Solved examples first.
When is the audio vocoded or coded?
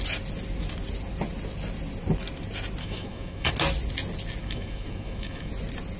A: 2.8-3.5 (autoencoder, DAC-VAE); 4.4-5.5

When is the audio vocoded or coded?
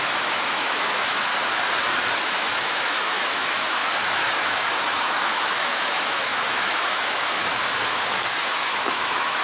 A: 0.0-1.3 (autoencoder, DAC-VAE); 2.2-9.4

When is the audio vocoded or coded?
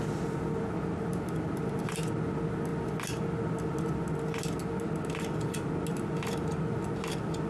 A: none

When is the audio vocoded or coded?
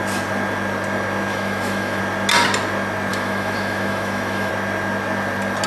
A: 1.3-2.0 (autoencoder, DAC-VAE); 3.1-4.5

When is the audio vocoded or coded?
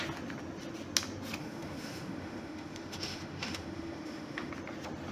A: 1.4-4.5 (autoencoder, DAC-VAE)